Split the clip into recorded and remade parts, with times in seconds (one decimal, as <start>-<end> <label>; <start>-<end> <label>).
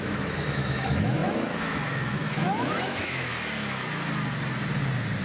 0.0-3.3 remade; 3.3-5.2 recorded